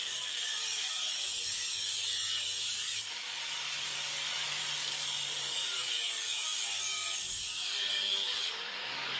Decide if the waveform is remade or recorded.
remade